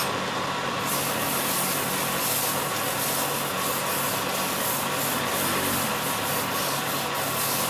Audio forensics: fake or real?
real